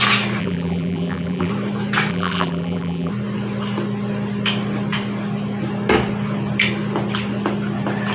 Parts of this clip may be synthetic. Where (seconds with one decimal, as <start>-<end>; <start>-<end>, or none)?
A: 0.4-1.5; 2.1-3.1